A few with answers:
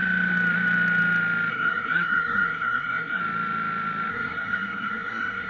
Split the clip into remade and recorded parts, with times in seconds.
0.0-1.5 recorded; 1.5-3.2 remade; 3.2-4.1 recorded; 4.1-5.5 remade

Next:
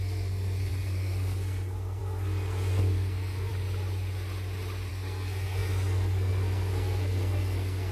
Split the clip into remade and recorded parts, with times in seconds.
0.0-3.5 remade; 3.5-4.9 recorded; 4.9-7.9 remade

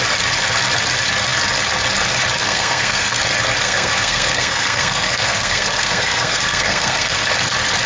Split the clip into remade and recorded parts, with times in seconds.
0.0-2.4 recorded; 2.4-3.2 remade; 3.2-3.6 recorded; 3.6-7.2 remade; 7.2-7.9 recorded

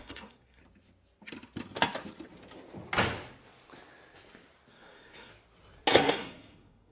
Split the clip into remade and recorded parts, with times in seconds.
0.0-0.6 remade; 0.6-4.7 recorded; 4.7-5.3 remade; 5.3-6.0 recorded; 6.0-6.9 remade

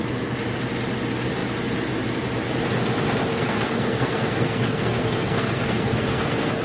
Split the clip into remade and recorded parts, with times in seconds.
0.0-3.3 recorded; 3.3-6.6 remade

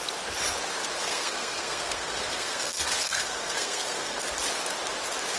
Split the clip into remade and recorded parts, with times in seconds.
0.0-1.0 recorded; 1.0-4.2 remade; 4.2-5.4 recorded

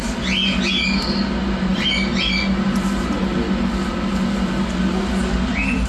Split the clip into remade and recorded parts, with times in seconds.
0.0-5.9 recorded

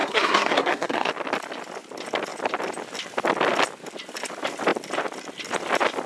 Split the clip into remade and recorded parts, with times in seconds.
0.0-1.1 remade; 1.1-6.1 recorded